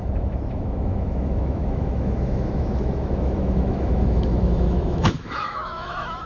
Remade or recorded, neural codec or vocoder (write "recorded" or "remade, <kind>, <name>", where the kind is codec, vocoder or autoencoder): remade, autoencoder, DAC-VAE